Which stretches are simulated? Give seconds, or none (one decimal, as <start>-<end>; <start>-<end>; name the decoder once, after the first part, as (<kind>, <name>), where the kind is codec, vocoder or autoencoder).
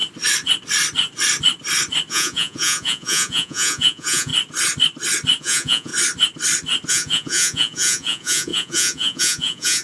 2.1-4.3 (vocoder, Vocos); 5.4-5.9; 6.9-9.8